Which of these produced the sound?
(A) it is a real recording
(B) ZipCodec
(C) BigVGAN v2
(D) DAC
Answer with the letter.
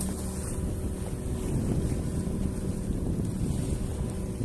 A